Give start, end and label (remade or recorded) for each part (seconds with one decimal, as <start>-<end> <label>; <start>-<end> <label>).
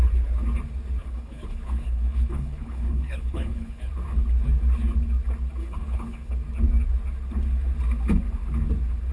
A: 0.0-1.0 recorded; 1.0-3.9 remade; 3.9-5.6 recorded; 5.6-6.3 remade; 6.3-9.1 recorded